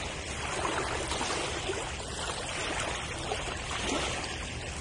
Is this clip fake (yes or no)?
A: no